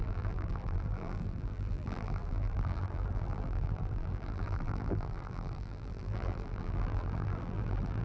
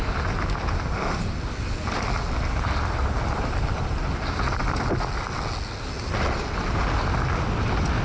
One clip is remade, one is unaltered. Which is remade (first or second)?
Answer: first